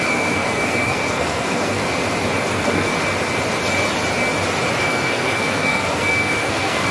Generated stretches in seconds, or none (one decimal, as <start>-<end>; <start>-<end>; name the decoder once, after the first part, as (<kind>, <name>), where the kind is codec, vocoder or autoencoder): 0.0-1.8 (codec, SNAC); 2.5-2.9; 4.8-6.9